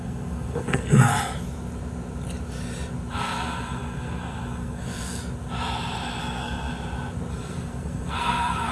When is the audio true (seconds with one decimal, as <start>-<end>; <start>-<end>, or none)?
1.1-3.1; 5.2-6.2; 6.7-7.3